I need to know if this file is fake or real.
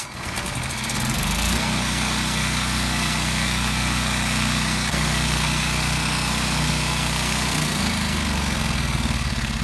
fake